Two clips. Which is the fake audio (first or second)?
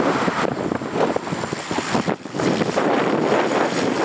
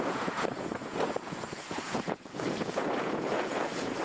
second